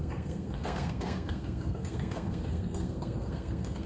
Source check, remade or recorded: remade